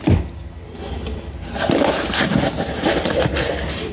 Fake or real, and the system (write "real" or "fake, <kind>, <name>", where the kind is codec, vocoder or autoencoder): real